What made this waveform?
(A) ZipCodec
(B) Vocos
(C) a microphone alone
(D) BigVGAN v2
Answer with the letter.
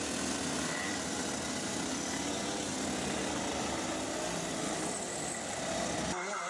C